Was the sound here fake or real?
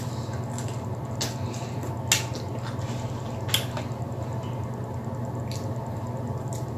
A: real